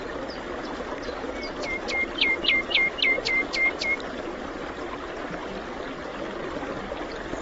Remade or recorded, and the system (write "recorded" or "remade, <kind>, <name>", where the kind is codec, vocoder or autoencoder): recorded